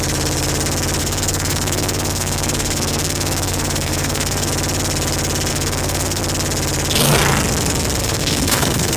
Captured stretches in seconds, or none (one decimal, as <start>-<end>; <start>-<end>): 0.0-1.0; 4.5-5.5; 6.2-8.0